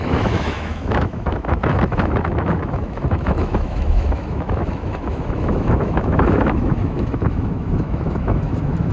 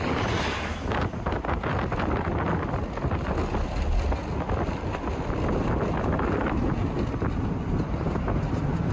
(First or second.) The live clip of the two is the second